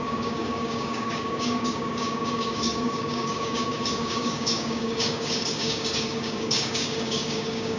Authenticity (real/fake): fake